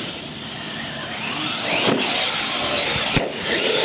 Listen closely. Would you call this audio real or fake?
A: fake